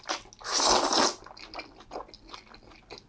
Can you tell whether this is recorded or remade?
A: recorded